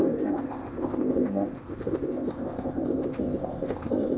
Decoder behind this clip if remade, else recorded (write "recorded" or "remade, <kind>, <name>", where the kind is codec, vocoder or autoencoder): remade, codec, ZipCodec